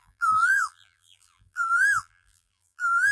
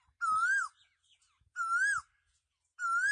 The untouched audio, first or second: second